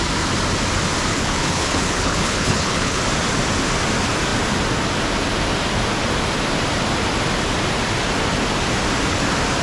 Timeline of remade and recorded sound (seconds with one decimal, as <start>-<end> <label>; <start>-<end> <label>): 0.0-1.1 recorded; 1.1-3.0 remade; 3.0-9.6 recorded